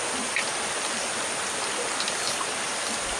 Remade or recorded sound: recorded